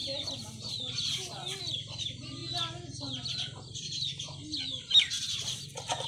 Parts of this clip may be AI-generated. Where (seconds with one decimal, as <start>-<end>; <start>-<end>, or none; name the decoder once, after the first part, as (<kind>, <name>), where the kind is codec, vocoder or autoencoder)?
none

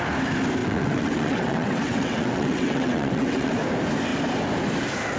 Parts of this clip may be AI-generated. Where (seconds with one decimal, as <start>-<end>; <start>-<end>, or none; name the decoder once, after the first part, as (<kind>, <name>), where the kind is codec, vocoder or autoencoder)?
0.6-3.5 (vocoder, WaveNeXt)

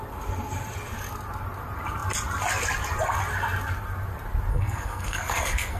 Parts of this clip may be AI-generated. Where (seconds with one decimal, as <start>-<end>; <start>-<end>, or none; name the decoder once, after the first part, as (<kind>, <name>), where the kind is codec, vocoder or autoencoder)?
4.5-5.8 (codec, SNAC)

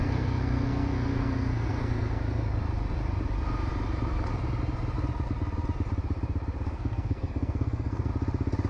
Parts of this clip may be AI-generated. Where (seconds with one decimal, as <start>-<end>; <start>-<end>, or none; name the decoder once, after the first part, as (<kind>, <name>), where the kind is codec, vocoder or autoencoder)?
0.0-2.2 (codec, SNAC); 6.7-8.1